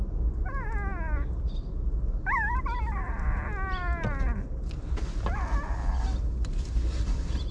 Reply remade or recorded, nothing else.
recorded